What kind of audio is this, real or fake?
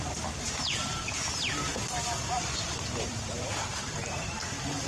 fake